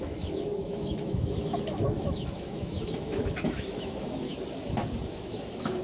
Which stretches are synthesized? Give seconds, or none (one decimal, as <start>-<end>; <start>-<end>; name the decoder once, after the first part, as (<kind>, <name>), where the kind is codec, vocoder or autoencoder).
0.0-4.3 (autoencoder, DAC-VAE); 5.1-5.8